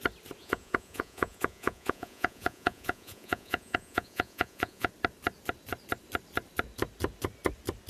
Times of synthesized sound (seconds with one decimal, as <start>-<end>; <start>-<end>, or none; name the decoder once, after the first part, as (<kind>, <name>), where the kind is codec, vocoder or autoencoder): 0.4-4.9 (vocoder, Vocos)

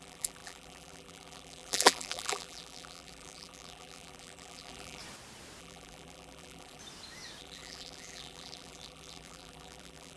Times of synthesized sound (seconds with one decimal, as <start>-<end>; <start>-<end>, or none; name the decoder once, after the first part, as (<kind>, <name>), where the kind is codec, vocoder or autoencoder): 0.0-5.0 (vocoder, BigVGAN v2); 5.6-6.8; 7.4-10.2

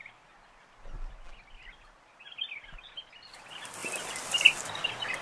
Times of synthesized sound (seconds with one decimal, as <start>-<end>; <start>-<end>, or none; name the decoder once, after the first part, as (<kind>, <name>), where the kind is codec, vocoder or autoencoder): none

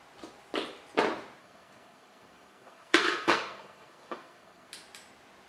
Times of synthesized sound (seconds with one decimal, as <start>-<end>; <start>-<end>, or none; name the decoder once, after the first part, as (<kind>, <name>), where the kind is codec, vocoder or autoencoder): 1.4-4.7 (codec, SNAC)

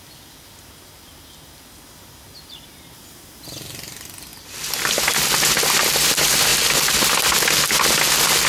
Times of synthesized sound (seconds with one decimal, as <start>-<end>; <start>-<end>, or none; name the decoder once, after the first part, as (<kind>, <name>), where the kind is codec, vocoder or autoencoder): none

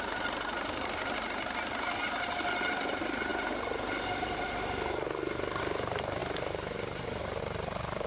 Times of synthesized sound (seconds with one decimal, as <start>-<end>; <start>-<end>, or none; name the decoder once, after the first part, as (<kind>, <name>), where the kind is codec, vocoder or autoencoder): none

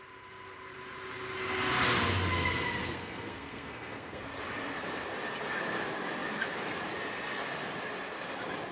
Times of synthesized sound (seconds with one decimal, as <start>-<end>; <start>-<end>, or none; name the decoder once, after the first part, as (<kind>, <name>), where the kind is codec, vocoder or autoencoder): 2.8-4.2 (codec, SNAC)